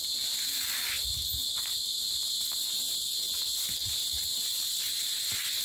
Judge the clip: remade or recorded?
recorded